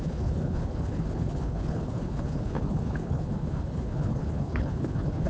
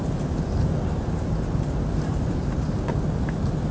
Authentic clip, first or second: second